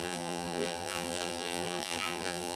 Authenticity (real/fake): fake